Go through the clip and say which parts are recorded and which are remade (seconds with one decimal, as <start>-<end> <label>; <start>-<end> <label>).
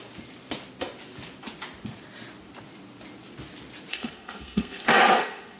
0.0-3.9 recorded; 3.9-5.6 remade